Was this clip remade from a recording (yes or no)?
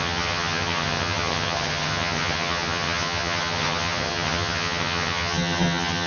yes